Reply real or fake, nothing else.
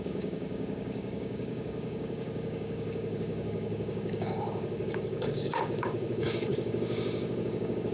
fake